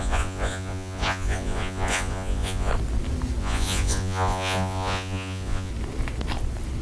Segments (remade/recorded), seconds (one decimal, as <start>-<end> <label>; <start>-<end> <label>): 0.0-2.7 remade; 2.7-3.4 recorded; 3.4-5.7 remade; 5.7-6.8 recorded

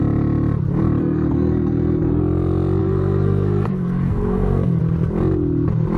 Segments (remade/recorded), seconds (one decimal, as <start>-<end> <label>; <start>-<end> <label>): 0.0-1.0 recorded; 1.0-2.2 remade; 2.2-2.8 recorded; 2.8-4.8 remade; 4.8-6.0 recorded

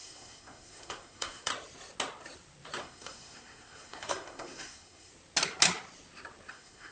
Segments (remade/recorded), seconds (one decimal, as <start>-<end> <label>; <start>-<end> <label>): 0.0-1.5 remade; 1.5-2.8 recorded; 2.8-5.1 remade; 5.1-6.5 recorded; 6.5-6.9 remade

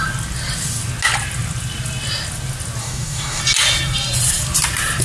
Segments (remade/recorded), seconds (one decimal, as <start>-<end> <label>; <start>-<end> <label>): 0.0-2.8 recorded; 2.8-3.4 remade; 3.4-5.0 recorded

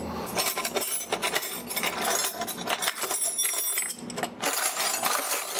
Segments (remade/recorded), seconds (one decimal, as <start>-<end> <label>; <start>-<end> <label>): 0.0-5.6 recorded

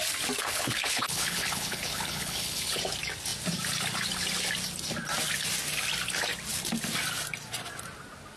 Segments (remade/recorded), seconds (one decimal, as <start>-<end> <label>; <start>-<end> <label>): 0.0-0.4 recorded; 0.4-2.8 remade; 2.8-8.4 recorded

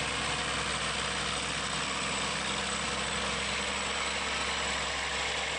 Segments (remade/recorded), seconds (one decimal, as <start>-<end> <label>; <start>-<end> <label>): 0.0-5.6 recorded